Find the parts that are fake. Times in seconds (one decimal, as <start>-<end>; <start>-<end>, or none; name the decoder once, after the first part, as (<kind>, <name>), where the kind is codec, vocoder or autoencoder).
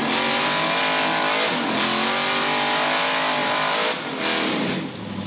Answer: none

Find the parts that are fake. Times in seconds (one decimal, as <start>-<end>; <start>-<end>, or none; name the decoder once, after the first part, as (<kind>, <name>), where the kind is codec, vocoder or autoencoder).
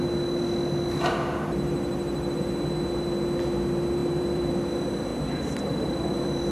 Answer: 4.0-4.5 (vocoder, BigVGAN v2); 5.1-6.5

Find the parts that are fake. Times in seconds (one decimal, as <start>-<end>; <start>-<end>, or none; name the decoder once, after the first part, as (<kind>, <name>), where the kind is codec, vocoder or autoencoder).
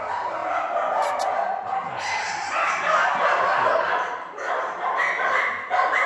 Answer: 3.2-5.1 (vocoder, BigVGAN v2)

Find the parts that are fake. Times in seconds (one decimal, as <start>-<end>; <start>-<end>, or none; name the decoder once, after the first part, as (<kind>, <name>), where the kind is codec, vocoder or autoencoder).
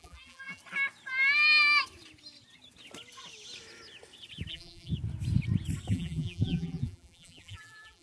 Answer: 0.0-0.6 (vocoder, BigVGAN v2); 4.5-4.9; 5.9-8.0